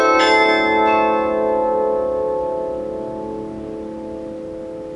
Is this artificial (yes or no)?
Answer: no